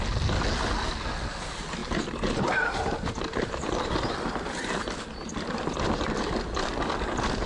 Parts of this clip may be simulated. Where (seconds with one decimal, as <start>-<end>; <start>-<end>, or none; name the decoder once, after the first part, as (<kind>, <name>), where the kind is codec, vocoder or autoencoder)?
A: 1.8-6.3 (vocoder, BigVGAN v2)